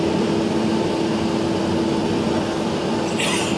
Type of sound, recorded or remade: recorded